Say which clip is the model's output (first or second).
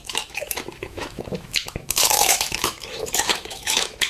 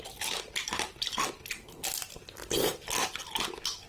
first